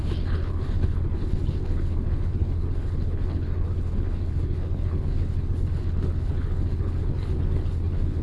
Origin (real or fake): fake